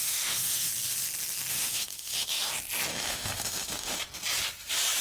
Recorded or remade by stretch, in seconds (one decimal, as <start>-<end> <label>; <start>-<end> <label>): 0.0-0.7 remade; 0.7-1.5 recorded; 1.5-2.5 remade; 2.5-2.9 recorded; 2.9-4.0 remade; 4.0-5.0 recorded